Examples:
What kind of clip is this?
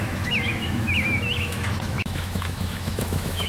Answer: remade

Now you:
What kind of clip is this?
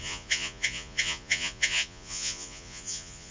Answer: remade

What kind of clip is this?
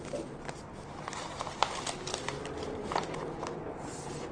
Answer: recorded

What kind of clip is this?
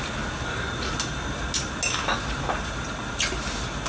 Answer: recorded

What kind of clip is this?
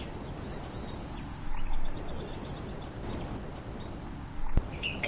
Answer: recorded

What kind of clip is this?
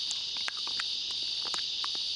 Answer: recorded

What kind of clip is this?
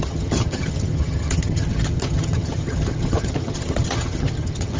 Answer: remade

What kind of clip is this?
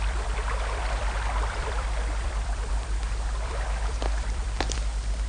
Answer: remade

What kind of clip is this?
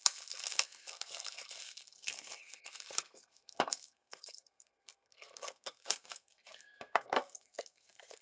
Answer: remade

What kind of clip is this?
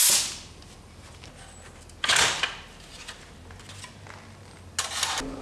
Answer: recorded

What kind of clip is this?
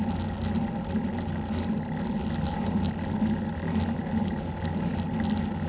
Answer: recorded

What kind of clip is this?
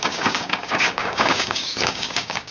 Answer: remade